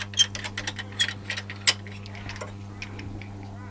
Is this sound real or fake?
real